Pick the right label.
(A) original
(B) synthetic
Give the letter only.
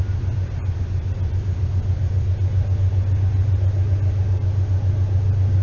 A